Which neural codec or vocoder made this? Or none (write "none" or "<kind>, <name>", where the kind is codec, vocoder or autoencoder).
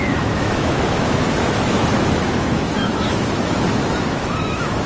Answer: autoencoder, DAC-VAE